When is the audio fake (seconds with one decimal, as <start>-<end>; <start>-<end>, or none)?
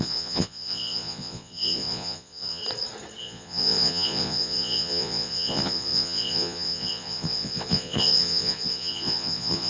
0.0-2.6; 3.2-9.7